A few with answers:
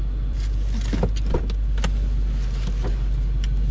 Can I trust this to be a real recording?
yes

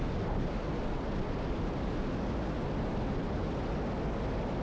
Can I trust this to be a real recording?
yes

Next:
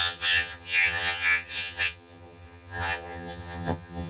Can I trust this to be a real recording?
no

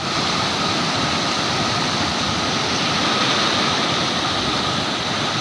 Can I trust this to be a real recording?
yes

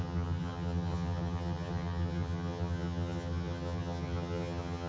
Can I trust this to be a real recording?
no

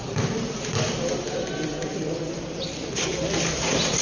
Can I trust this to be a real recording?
yes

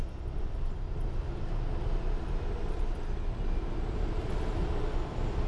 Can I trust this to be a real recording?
yes